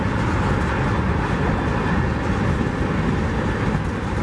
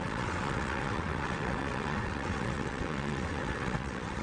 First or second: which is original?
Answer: first